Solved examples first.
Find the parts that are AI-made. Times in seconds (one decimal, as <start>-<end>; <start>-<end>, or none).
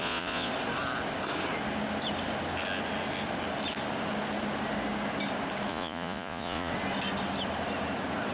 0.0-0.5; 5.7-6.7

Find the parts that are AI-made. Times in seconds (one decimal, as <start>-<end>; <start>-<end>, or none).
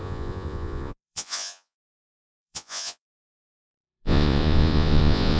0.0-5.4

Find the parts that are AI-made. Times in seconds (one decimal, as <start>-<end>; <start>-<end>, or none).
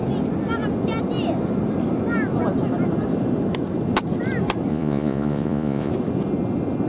4.7-5.9